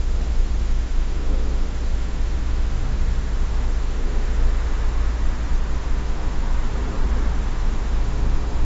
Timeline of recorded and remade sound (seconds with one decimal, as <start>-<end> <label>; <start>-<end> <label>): 0.0-5.2 remade; 5.2-5.8 recorded; 5.8-6.4 remade; 6.4-7.3 recorded; 7.3-8.6 remade